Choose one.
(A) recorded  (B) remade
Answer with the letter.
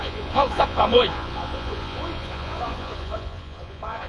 B